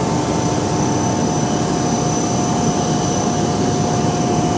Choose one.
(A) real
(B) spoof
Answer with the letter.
A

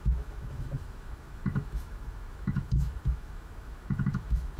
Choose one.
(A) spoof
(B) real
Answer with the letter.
A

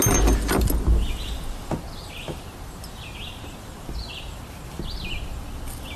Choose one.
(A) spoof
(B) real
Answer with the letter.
B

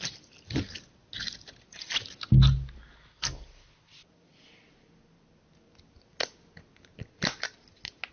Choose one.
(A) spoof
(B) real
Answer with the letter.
B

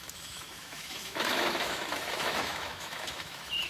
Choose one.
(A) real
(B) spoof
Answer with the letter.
B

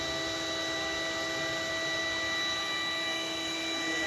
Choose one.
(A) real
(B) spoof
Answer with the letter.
A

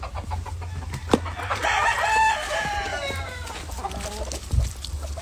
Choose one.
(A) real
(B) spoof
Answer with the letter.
A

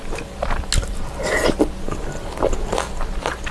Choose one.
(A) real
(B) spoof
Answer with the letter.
A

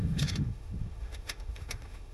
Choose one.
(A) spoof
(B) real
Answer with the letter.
A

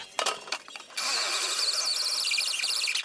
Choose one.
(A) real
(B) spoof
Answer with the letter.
A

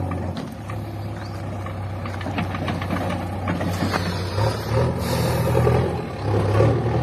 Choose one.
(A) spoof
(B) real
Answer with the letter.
B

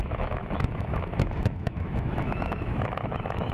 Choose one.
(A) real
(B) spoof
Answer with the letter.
B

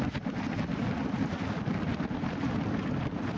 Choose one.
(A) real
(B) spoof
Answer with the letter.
A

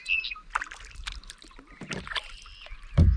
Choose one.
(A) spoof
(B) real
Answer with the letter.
B